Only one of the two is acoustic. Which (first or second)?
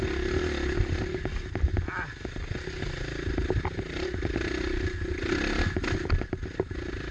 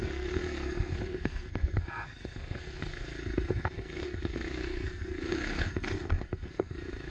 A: first